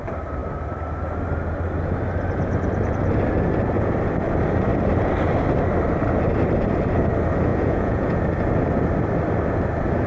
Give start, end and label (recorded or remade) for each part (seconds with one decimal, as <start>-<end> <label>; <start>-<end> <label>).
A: 0.0-7.5 recorded; 7.5-8.2 remade; 8.2-10.1 recorded